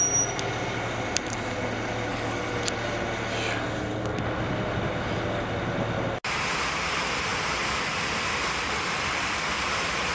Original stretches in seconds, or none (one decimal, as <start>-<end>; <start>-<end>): 0.0-2.1; 2.6-10.1